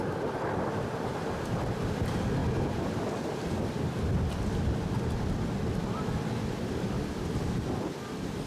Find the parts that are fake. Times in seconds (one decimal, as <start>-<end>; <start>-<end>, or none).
0.0-2.4; 6.4-8.5